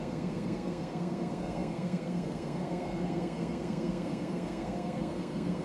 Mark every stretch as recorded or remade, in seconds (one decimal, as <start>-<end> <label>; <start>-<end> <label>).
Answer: 0.0-5.6 remade